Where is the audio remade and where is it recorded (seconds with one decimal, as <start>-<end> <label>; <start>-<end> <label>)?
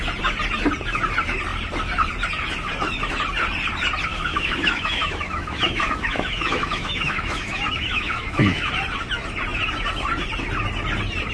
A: 0.0-4.1 recorded; 4.1-8.7 remade; 8.7-11.3 recorded